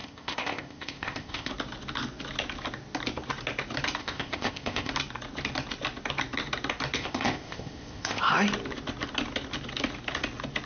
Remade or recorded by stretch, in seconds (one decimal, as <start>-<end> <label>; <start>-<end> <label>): 0.0-1.5 remade; 1.5-4.0 recorded; 4.0-4.9 remade; 4.9-7.0 recorded; 7.0-8.2 remade; 8.2-10.7 recorded

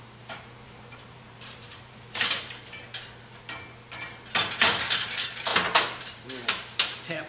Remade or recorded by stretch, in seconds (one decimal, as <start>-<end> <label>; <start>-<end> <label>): 0.0-2.8 remade; 2.8-5.0 recorded; 5.0-5.5 remade; 5.5-6.0 recorded; 6.0-7.3 remade

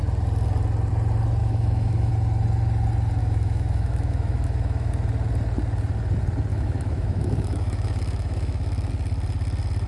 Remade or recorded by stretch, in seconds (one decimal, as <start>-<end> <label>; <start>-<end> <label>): 0.0-1.4 recorded; 1.4-2.1 remade; 2.1-3.2 recorded; 3.2-4.9 remade; 4.9-6.5 recorded; 6.5-8.9 remade; 8.9-9.9 recorded